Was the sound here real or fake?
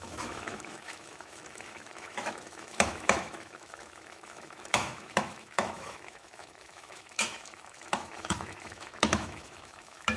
fake